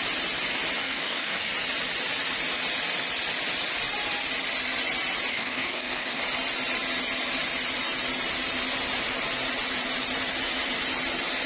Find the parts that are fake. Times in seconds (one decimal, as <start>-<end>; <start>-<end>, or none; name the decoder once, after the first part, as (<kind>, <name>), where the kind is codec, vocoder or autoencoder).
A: 0.8-1.5 (codec, DAC); 5.3-6.2